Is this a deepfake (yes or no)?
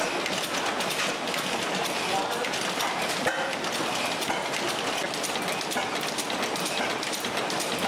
no